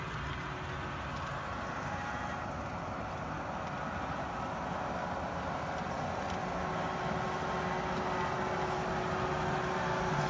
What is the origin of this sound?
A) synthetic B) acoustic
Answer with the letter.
B